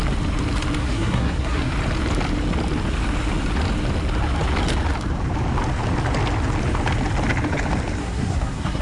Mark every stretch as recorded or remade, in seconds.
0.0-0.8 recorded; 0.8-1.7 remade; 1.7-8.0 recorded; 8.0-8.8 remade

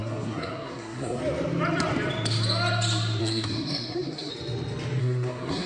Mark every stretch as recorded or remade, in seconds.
0.0-1.2 remade; 1.2-3.2 recorded; 3.2-4.3 remade; 4.3-5.0 recorded; 5.0-5.7 remade

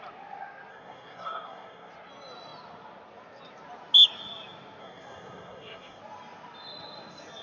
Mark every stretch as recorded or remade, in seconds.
0.0-0.7 recorded; 0.7-1.9 remade; 1.9-4.8 recorded; 4.8-6.0 remade; 6.0-7.4 recorded

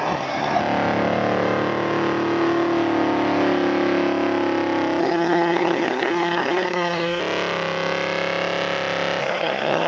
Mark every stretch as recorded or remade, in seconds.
0.0-0.6 remade; 0.6-5.0 recorded; 5.0-7.2 remade; 7.2-9.2 recorded; 9.2-9.9 remade

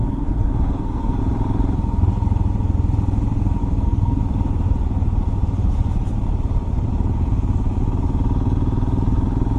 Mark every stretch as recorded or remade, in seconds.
0.0-1.2 remade; 1.2-3.6 recorded; 3.6-4.2 remade; 4.2-9.6 recorded

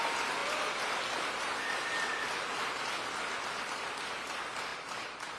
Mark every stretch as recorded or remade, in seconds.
0.0-5.4 recorded

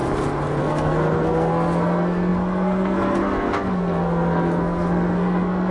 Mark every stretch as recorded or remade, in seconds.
0.0-0.6 recorded; 0.6-5.7 remade